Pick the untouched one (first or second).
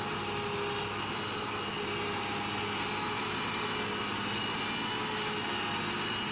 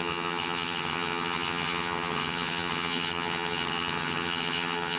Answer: first